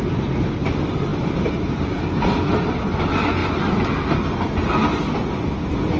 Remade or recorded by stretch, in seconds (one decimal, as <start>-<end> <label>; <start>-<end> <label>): 0.0-6.0 recorded